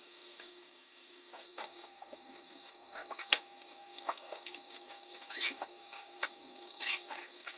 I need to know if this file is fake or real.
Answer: fake